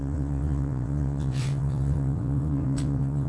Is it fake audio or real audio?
fake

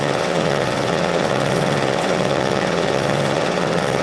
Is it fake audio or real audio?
fake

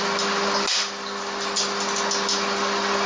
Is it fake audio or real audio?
real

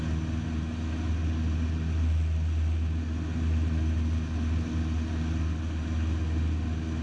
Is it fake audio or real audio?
real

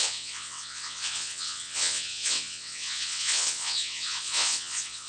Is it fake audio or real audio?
fake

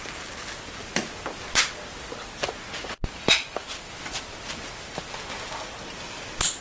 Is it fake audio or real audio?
real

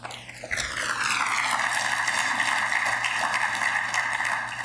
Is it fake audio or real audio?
real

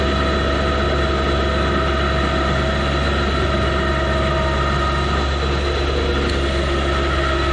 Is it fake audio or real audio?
real